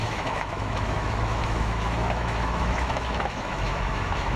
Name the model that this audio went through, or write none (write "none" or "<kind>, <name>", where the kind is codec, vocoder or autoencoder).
autoencoder, DAC-VAE